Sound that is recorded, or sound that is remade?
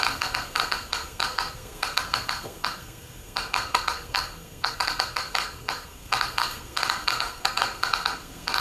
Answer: remade